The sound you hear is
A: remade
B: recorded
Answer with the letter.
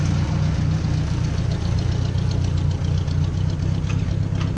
B